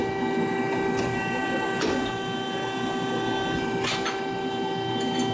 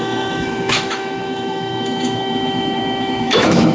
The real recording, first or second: first